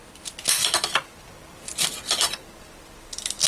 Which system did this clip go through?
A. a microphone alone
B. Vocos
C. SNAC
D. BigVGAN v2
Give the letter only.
A